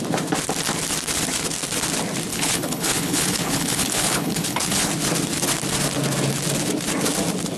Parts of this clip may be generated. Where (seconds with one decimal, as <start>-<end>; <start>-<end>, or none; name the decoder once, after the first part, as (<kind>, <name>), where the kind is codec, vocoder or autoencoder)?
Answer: 2.3-4.9 (codec, HILCodec)